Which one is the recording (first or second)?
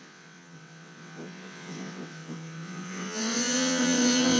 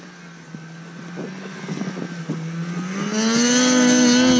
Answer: second